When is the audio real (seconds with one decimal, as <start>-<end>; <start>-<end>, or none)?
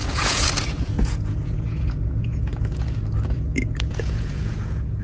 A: 2.5-3.9